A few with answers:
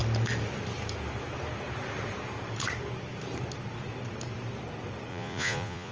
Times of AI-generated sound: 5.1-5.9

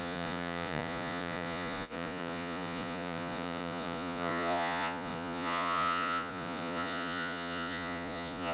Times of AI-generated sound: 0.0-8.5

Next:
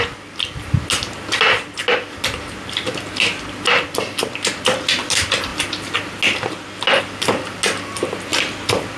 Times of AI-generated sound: none